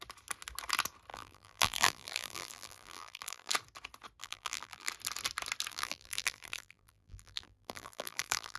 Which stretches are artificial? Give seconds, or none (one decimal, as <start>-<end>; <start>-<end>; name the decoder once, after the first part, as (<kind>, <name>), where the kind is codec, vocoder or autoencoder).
1.1-3.5 (vocoder, BigVGAN v2); 4.2-4.9; 5.7-8.6